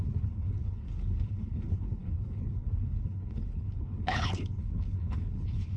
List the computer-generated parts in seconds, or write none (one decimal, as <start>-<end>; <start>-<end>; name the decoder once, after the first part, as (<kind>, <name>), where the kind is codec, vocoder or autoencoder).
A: 0.0-5.8 (codec, HILCodec)